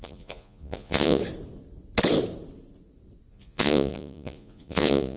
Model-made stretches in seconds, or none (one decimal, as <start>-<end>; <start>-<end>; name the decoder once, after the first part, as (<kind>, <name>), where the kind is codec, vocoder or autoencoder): 0.0-1.2 (vocoder, Vocos); 3.3-5.2